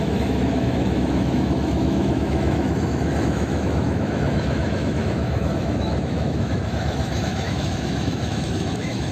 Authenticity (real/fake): fake